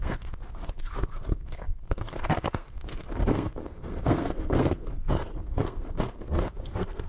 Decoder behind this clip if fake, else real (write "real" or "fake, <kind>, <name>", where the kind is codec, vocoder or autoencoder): fake, codec, SNAC